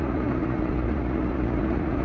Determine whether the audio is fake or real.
fake